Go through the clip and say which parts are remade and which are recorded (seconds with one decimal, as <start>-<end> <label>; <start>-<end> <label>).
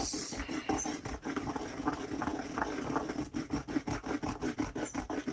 0.0-0.9 recorded; 0.9-1.5 remade; 1.5-5.3 recorded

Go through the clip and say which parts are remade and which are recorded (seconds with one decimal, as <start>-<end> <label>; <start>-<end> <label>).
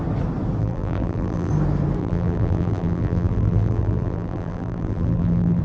0.0-0.6 recorded; 0.6-1.5 remade; 1.5-2.0 recorded; 2.0-5.6 remade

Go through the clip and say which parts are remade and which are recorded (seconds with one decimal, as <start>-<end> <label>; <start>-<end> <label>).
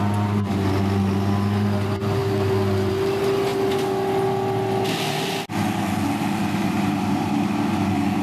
0.0-6.6 recorded; 6.6-7.3 remade; 7.3-8.2 recorded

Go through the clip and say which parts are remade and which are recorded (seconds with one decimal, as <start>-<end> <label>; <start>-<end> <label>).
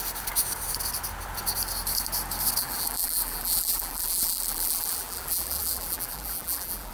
0.0-2.6 recorded; 2.6-6.9 remade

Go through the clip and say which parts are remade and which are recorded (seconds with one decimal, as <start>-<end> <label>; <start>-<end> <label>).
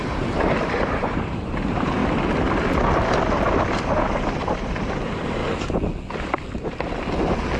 0.0-2.0 remade; 2.0-4.5 recorded; 4.5-5.4 remade; 5.4-7.6 recorded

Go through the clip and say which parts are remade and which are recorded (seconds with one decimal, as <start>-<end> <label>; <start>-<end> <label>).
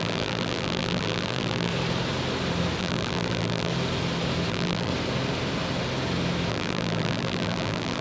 0.0-1.7 remade; 1.7-2.8 recorded; 2.8-3.7 remade; 3.7-4.5 recorded; 4.5-4.9 remade; 4.9-6.5 recorded; 6.5-8.0 remade